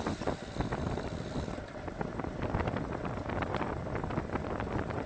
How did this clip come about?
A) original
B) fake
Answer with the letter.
A